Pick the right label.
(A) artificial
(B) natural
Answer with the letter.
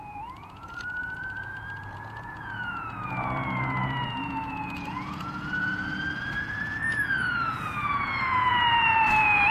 A